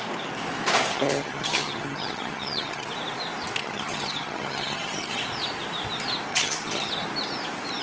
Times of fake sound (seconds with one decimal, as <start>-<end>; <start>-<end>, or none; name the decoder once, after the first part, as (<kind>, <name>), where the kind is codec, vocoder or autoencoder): 0.9-2.9 (vocoder, HiFi-GAN); 3.6-5.2; 6.3-6.9